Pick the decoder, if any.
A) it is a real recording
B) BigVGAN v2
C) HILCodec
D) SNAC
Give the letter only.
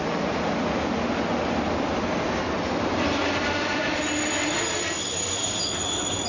A